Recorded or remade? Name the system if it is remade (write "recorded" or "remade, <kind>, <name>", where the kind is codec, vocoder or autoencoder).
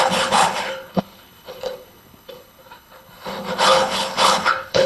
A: remade, codec, HILCodec